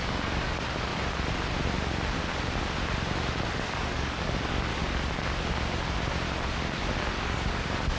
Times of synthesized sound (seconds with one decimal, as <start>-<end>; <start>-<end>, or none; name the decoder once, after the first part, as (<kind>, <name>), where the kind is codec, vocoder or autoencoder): 0.0-0.9 (codec, DAC); 3.5-4.7; 7.1-8.0